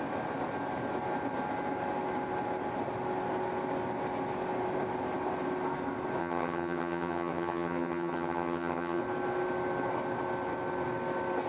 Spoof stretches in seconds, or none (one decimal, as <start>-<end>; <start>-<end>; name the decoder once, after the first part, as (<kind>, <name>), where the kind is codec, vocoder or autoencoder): 6.2-9.0 (vocoder, HiFi-GAN)